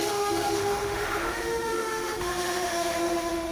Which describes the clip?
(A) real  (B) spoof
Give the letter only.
B